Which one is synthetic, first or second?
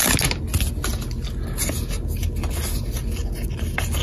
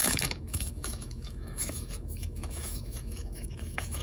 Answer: second